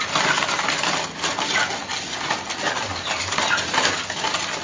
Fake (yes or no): no